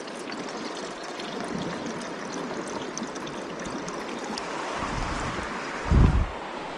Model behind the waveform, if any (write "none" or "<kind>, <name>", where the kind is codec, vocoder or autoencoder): none